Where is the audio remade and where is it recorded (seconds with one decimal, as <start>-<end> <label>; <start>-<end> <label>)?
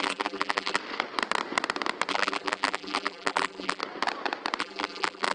0.0-0.8 remade; 0.8-2.1 recorded; 2.1-3.8 remade; 3.8-4.6 recorded; 4.6-5.3 remade